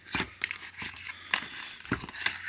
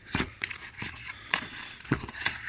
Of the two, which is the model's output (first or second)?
second